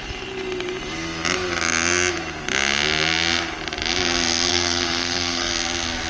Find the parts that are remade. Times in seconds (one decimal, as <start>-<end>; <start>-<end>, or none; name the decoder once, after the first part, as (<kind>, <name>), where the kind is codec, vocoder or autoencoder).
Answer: 4.5-5.5 (codec, SNAC)